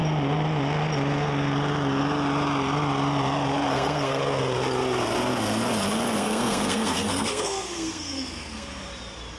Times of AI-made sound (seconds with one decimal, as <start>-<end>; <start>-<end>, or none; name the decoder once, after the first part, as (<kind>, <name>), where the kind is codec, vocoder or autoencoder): 3.7-4.2 (codec, SNAC); 6.2-8.9